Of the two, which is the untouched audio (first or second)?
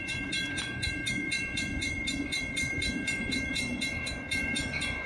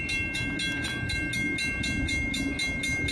second